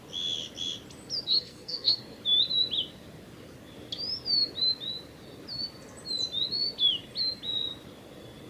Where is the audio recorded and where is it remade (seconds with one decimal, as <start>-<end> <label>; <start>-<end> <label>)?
0.0-1.3 recorded; 1.3-2.0 remade; 2.0-8.5 recorded